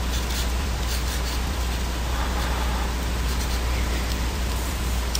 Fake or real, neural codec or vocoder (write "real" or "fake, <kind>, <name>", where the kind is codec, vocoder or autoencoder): fake, vocoder, BigVGAN v2